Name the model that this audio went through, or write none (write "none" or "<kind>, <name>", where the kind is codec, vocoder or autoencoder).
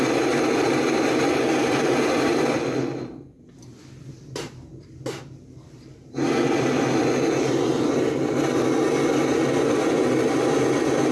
none